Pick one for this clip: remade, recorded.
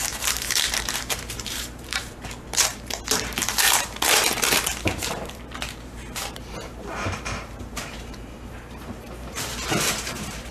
remade